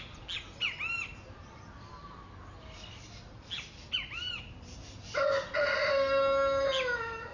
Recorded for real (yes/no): yes